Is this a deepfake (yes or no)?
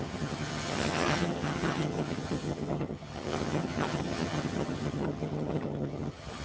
yes